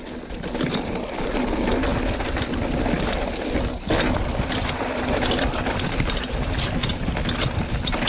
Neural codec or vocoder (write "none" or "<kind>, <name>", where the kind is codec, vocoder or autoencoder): none